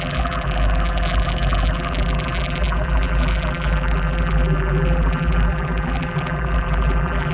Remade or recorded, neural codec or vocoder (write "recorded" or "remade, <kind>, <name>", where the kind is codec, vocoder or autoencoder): remade, vocoder, BigVGAN v2